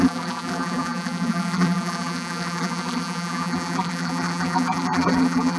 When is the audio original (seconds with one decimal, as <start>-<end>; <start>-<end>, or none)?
none